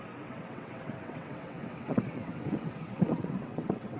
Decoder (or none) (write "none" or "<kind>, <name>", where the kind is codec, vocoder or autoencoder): vocoder, WaveNeXt